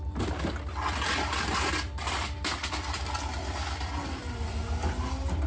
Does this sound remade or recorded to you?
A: recorded